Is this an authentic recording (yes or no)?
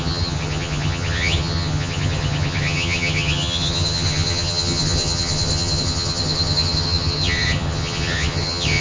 no